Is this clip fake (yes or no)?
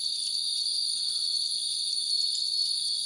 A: yes